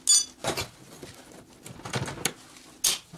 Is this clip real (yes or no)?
yes